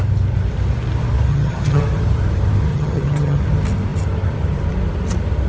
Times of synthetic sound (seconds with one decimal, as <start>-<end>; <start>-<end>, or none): 1.3-1.8; 2.7-3.4